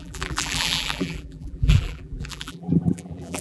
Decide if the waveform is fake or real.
fake